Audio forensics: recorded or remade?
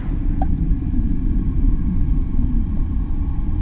remade